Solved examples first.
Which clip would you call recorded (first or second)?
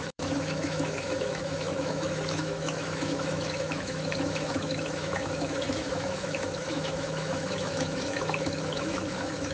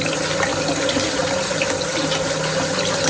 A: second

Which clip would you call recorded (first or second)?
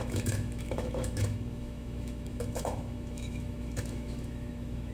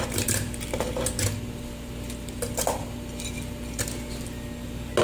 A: second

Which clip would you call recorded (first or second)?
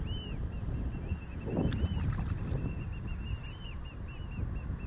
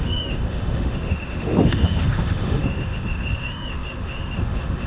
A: first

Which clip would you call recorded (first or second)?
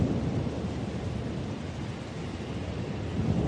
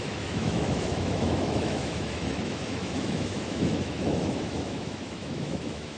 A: first